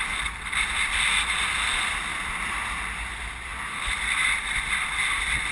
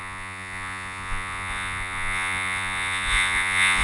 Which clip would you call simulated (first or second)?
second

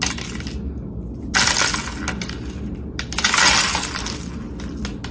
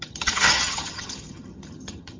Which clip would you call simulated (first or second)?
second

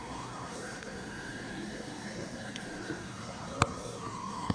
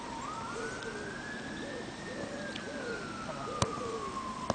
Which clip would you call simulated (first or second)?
first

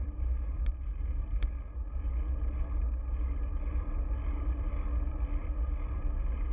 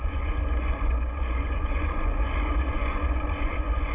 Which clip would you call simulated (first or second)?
second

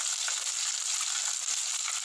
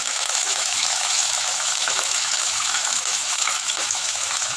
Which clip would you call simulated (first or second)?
second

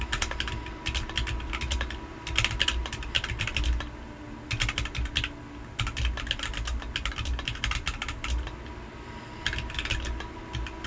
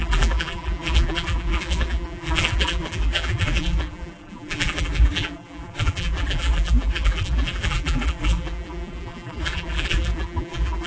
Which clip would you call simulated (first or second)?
second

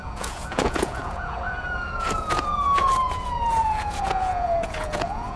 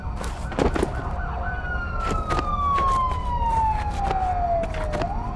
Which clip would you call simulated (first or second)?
first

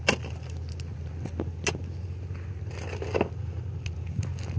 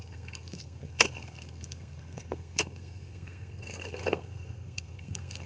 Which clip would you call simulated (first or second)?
second